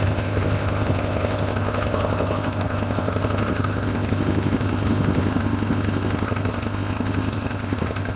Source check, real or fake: fake